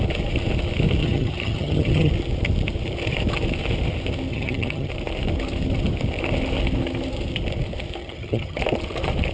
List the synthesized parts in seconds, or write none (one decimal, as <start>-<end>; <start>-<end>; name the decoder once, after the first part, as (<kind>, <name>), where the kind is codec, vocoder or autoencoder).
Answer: 1.0-2.1 (vocoder, HiFi-GAN); 4.3-4.9; 8.0-8.6